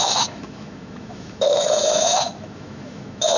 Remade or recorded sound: remade